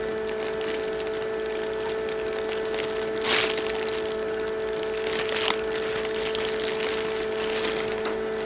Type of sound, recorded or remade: recorded